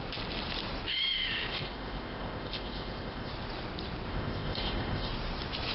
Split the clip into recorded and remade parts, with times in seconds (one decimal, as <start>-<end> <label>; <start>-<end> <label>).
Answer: 0.0-1.5 recorded; 1.5-3.3 remade; 3.3-4.1 recorded; 4.1-5.1 remade; 5.1-5.7 recorded